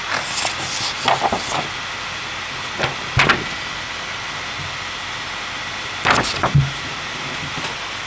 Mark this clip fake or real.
real